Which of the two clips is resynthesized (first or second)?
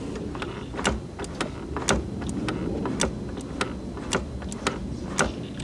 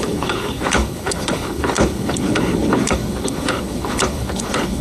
second